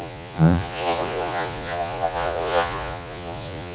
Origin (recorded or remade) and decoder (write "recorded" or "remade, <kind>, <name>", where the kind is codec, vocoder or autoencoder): remade, vocoder, Vocos